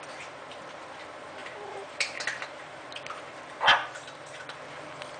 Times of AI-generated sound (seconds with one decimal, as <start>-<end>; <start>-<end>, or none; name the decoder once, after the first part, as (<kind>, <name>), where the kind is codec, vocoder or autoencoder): 1.4-3.0 (vocoder, BigVGAN v2); 3.8-4.6